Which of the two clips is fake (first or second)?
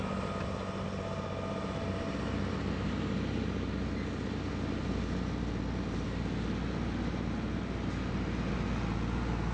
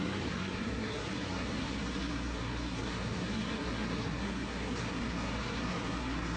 second